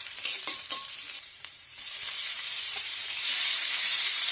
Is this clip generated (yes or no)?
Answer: yes